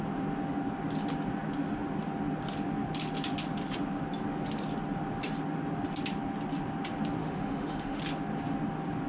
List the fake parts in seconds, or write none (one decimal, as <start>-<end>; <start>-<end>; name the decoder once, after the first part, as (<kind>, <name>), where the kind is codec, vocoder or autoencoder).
7.2-8.0 (autoencoder, DAC-VAE)